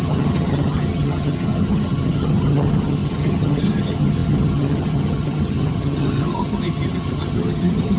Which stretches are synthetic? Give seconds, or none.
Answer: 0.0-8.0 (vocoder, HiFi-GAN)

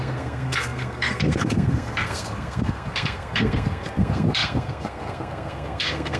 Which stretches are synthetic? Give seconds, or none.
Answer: 0.0-6.2 (codec, SNAC)

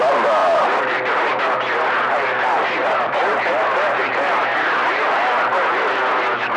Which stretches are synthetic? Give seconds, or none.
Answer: 0.4-1.4 (vocoder, BigVGAN v2); 2.8-3.5; 4.0-5.5

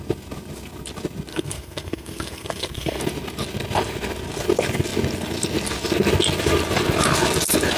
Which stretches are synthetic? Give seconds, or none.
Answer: 1.3-3.0 (codec, SNAC)